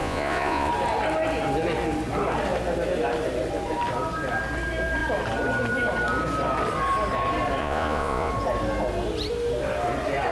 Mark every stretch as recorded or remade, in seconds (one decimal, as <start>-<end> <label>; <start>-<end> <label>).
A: 0.0-0.7 remade; 0.7-7.6 recorded; 7.6-8.3 remade; 8.3-10.3 recorded